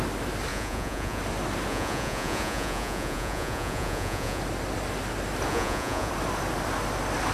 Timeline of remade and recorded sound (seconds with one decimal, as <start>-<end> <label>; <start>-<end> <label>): 0.0-0.5 recorded; 0.5-1.2 remade; 1.2-1.7 recorded; 1.7-4.4 remade; 4.4-5.5 recorded; 5.5-6.1 remade; 6.1-7.3 recorded